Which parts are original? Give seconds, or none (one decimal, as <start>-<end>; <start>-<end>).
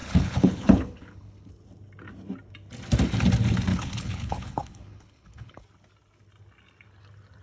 1.5-3.7; 5.6-7.4